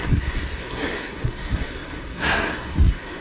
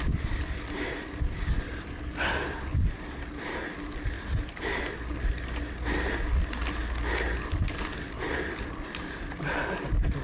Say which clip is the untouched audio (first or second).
second